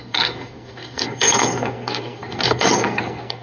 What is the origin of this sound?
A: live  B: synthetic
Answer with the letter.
B